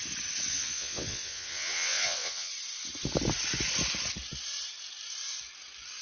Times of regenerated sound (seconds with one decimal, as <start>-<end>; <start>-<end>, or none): 0.5-2.5